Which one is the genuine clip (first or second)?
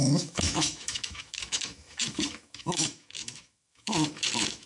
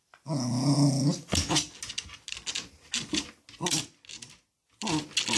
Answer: second